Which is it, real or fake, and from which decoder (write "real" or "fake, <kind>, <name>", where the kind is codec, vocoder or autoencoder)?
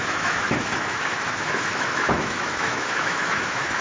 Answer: fake, autoencoder, DAC-VAE